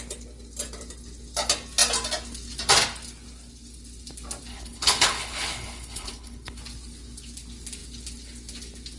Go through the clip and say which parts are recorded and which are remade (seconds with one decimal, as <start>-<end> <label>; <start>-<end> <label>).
0.0-4.5 recorded; 4.5-6.6 remade; 6.6-9.0 recorded